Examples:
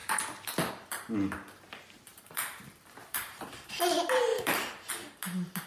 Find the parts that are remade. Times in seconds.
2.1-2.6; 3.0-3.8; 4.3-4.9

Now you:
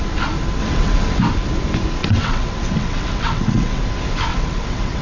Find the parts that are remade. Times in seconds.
0.6-1.2; 2.0-3.8; 4.3-5.0

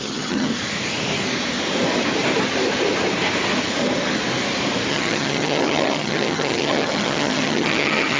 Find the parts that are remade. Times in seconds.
0.0-0.5; 4.9-8.2

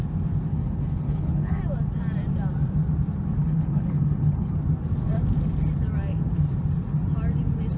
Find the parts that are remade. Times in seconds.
0.5-1.6; 3.4-4.5

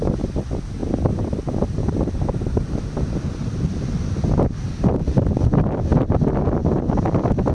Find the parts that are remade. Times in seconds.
none

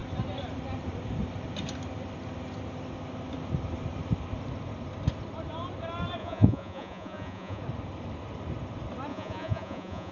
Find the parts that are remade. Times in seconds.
6.2-7.6; 9.1-10.1